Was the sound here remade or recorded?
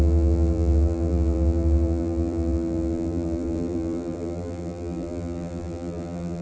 remade